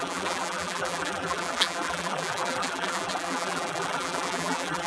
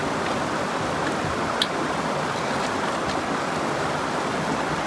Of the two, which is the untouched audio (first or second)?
second